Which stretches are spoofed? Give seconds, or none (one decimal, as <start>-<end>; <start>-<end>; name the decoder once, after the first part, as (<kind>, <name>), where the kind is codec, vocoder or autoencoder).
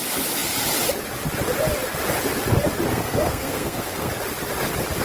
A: 2.9-4.1 (codec, SNAC)